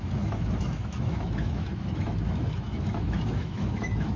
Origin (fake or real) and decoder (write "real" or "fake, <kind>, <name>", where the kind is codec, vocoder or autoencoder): fake, autoencoder, DAC-VAE